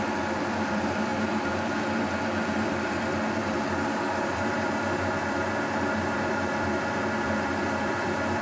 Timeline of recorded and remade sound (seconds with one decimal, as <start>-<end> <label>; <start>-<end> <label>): 0.0-8.4 remade